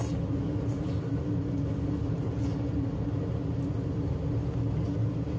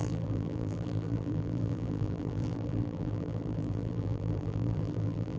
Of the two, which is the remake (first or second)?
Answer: second